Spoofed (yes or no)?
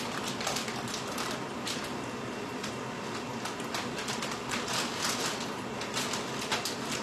no